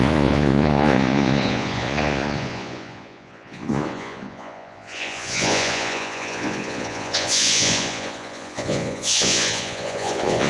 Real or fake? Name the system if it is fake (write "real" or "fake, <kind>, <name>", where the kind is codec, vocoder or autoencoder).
fake, vocoder, Vocos